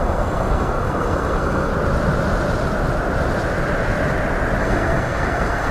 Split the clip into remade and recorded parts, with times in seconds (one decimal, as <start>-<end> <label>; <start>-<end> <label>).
0.0-1.7 remade; 1.7-4.6 recorded; 4.6-5.7 remade